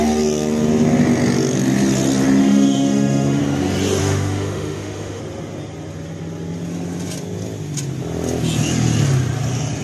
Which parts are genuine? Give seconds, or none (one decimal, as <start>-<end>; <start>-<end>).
0.0-2.4; 3.4-4.0; 5.2-9.8